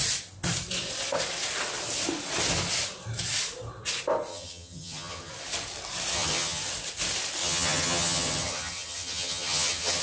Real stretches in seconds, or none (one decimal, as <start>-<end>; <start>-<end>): 0.0-4.3; 5.3-6.1; 6.6-7.4

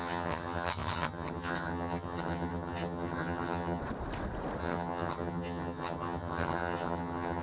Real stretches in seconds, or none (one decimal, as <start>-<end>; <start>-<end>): 3.8-4.6